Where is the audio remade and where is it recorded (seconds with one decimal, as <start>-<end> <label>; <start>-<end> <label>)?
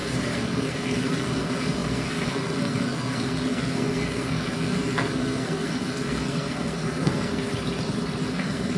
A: 0.0-7.5 remade; 7.5-8.3 recorded; 8.3-8.8 remade